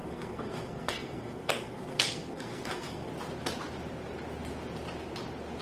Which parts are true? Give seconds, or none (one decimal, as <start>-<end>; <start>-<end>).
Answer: 3.1-5.6